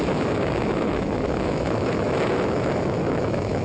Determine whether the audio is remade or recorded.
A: remade